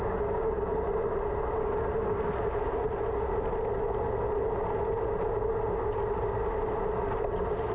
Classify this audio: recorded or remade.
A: recorded